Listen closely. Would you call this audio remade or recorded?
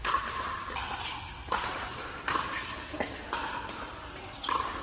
remade